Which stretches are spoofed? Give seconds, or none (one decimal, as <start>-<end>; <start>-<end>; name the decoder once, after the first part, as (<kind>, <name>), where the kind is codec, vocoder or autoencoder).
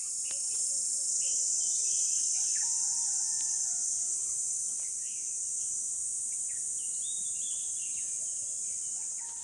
none